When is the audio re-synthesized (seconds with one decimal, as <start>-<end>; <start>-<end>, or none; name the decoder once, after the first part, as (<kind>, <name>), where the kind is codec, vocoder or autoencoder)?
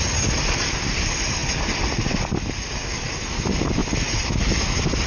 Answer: none